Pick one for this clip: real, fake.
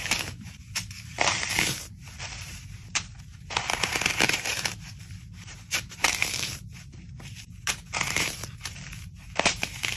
fake